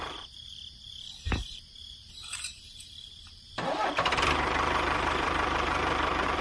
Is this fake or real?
fake